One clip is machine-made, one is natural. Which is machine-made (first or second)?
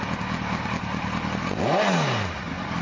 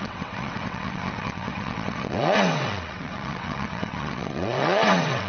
second